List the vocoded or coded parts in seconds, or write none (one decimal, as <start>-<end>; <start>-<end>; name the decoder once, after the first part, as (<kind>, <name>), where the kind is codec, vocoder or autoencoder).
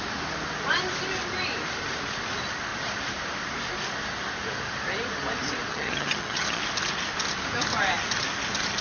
5.7-6.6 (vocoder, HiFi-GAN)